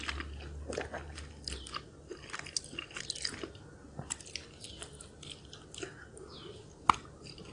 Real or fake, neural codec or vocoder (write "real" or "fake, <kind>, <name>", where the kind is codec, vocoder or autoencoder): real